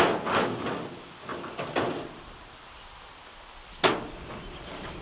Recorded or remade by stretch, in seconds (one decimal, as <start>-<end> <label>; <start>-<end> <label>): 0.0-5.0 recorded